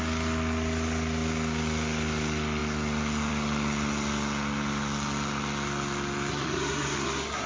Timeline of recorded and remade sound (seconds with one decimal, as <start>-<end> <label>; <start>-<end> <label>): 0.0-6.3 recorded; 6.3-7.5 remade